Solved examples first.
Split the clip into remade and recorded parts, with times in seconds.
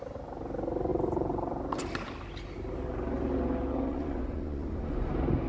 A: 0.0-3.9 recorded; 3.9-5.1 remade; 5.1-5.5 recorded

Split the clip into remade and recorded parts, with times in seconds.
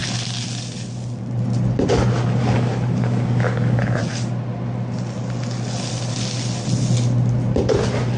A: 0.0-2.4 recorded; 2.4-4.0 remade; 4.0-8.2 recorded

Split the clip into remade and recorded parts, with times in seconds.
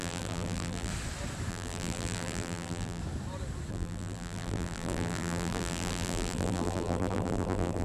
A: 0.0-0.9 remade; 0.9-1.5 recorded; 1.5-3.0 remade; 3.0-3.7 recorded; 3.7-7.8 remade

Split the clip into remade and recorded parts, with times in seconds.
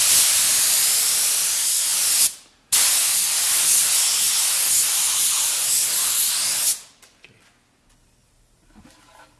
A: 0.0-9.4 recorded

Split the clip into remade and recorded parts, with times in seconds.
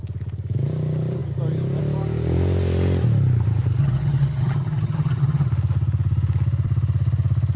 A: 0.0-3.8 recorded; 3.8-5.5 remade; 5.5-7.6 recorded